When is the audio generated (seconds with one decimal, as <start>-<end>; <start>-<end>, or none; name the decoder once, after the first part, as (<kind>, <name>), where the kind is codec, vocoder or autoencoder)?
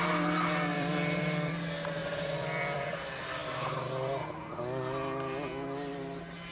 0.7-1.5 (vocoder, BigVGAN v2); 2.0-2.8